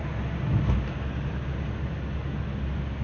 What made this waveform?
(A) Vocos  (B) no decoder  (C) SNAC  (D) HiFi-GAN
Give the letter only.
B